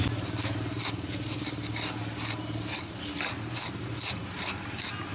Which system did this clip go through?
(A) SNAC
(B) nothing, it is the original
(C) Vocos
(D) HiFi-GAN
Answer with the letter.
B